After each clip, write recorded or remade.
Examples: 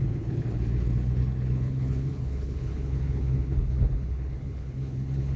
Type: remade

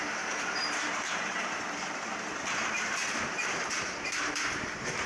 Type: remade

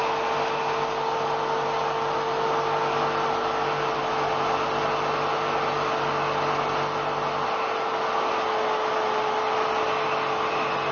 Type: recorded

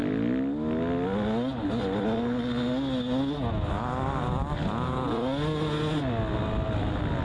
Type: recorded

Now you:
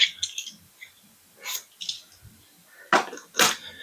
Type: recorded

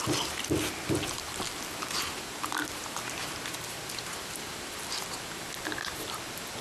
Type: recorded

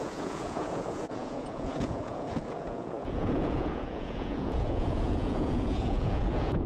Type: remade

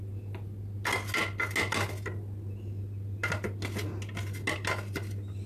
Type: recorded